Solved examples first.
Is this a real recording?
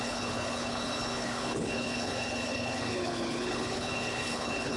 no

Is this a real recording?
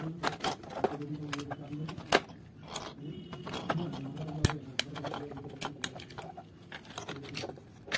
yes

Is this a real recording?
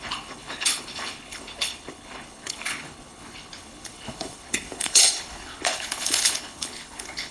no